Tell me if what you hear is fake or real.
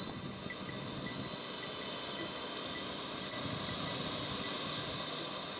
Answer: real